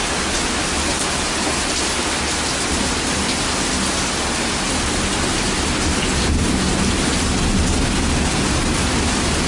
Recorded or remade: recorded